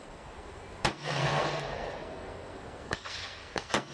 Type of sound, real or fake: fake